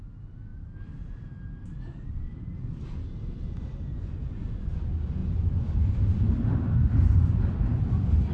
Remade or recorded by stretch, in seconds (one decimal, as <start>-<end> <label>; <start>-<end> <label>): 0.0-3.9 recorded; 3.9-4.8 remade; 4.8-8.3 recorded